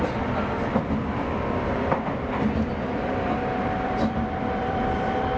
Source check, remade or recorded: remade